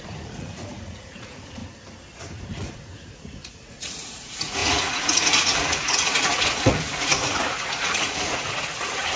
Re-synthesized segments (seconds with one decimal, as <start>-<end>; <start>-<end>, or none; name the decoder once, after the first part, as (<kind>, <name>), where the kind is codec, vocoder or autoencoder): 0.0-1.6 (vocoder, Vocos); 2.2-9.2